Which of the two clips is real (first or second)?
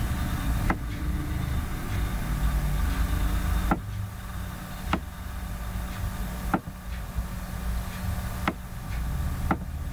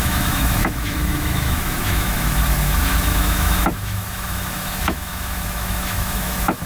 first